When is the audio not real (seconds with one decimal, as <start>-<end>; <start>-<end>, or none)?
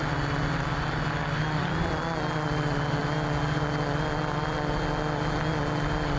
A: none